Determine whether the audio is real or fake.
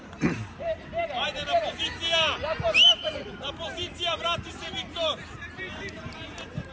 fake